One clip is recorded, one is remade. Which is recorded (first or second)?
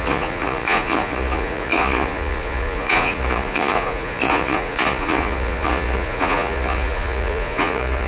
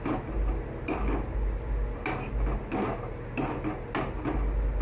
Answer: second